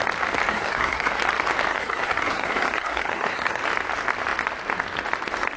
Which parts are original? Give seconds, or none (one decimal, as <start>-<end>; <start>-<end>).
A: 0.0-0.5; 1.1-1.7; 3.6-5.6